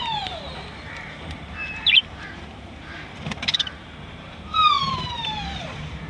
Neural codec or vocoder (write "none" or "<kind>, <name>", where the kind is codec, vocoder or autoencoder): vocoder, BigVGAN v2